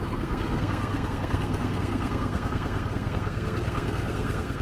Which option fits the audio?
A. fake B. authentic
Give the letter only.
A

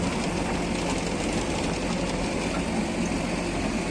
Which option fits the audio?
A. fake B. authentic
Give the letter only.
B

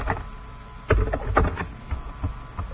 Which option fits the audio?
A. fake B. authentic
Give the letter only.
B